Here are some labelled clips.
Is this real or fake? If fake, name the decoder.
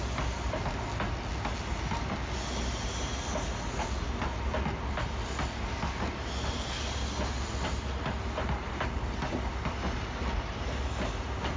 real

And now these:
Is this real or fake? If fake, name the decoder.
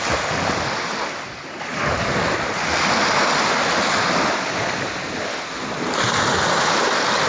real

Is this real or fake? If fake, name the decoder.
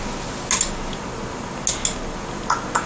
real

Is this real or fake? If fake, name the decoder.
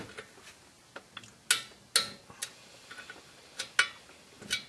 real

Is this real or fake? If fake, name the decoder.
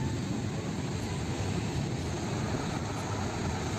real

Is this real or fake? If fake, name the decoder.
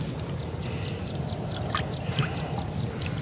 real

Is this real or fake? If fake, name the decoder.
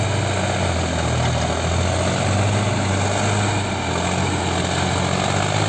real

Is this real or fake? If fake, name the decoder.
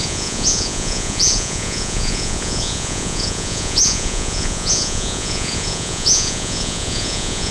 fake, vocoder, Vocos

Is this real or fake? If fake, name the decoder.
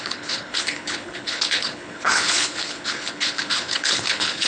fake, codec, HILCodec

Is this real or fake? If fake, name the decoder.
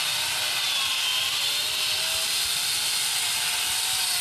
real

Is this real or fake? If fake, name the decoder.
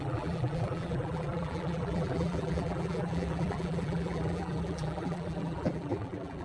fake, vocoder, BigVGAN v2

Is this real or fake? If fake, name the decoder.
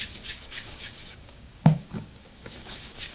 fake, codec, DAC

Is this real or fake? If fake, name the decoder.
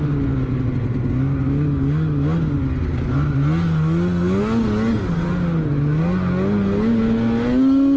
real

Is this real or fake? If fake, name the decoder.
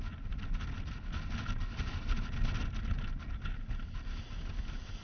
real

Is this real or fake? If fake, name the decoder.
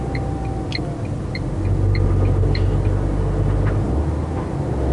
real